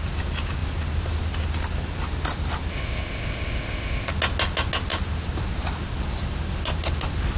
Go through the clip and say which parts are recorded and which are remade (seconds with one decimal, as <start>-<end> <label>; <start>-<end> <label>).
0.0-2.7 recorded; 2.7-4.1 remade; 4.1-7.4 recorded